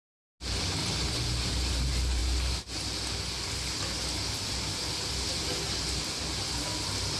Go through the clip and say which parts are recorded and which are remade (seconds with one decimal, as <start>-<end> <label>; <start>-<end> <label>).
0.0-7.2 recorded